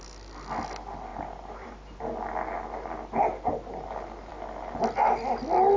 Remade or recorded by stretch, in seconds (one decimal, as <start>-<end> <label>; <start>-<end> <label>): 0.0-1.1 recorded; 1.1-2.0 remade; 2.0-5.8 recorded